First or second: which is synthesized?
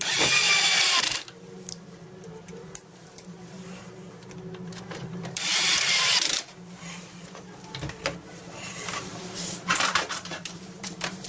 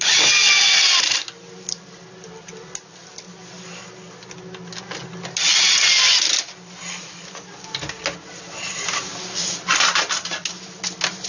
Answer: first